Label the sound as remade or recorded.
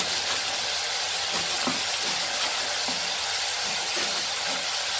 recorded